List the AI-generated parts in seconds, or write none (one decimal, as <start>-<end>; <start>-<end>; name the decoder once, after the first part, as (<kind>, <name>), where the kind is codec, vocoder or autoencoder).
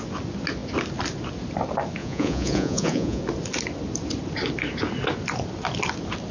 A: 2.0-3.2 (vocoder, Vocos)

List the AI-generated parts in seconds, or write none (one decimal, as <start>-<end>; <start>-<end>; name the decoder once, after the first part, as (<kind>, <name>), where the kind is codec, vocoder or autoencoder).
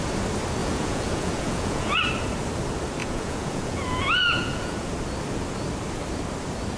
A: 0.6-2.0 (vocoder, Vocos); 3.0-4.9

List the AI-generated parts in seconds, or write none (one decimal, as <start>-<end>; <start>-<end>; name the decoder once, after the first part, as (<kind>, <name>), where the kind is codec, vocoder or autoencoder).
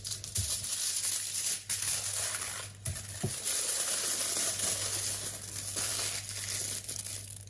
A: none